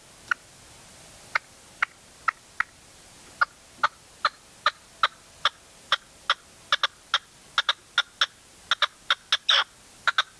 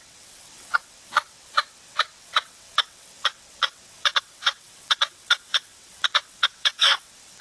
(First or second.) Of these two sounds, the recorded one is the first